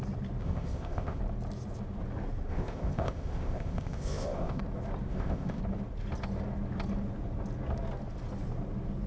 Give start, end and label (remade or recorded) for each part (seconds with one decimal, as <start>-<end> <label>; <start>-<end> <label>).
0.0-0.4 recorded; 0.4-1.2 remade; 1.2-2.5 recorded; 2.5-4.6 remade; 4.6-5.1 recorded; 5.1-5.6 remade; 5.6-9.1 recorded